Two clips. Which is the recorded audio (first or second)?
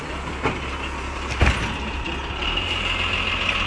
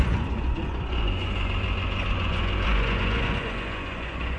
first